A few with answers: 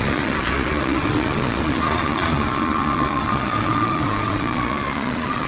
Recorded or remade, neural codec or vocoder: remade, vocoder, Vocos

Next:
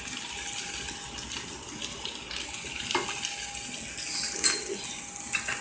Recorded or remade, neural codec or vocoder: recorded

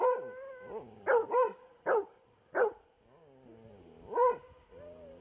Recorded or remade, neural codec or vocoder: remade, vocoder, BigVGAN v2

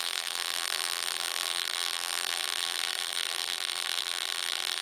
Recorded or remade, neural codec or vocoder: remade, vocoder, BigVGAN v2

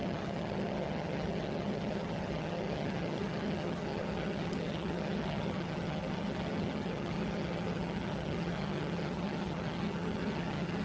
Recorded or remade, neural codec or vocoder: remade, vocoder, HiFi-GAN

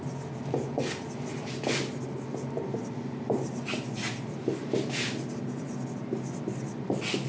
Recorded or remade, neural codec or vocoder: recorded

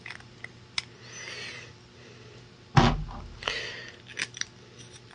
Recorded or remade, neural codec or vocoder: recorded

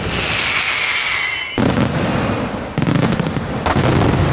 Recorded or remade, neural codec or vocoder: recorded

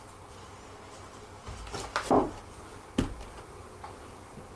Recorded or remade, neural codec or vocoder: recorded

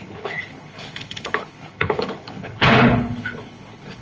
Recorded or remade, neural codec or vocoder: remade, codec, HILCodec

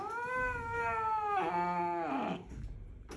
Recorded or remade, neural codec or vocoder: recorded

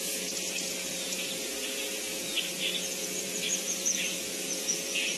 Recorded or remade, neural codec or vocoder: remade, vocoder, Vocos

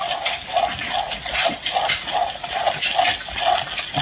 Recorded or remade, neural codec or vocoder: recorded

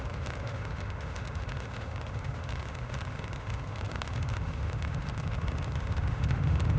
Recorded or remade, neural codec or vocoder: remade, autoencoder, DAC-VAE